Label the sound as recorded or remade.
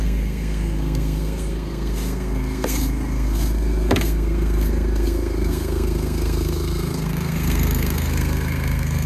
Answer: remade